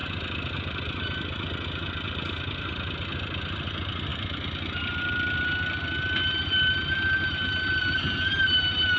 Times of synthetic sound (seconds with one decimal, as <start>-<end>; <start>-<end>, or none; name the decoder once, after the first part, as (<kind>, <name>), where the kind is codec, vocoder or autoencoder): none